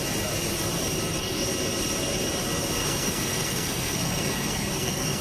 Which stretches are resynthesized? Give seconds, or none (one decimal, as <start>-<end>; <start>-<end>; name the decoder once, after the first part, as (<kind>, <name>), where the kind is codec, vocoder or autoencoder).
2.8-5.2 (codec, SNAC)